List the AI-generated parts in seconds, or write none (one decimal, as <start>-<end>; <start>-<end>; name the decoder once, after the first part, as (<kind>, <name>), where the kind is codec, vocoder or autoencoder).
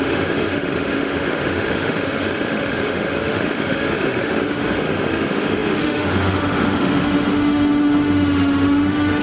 0.0-9.2 (autoencoder, DAC-VAE)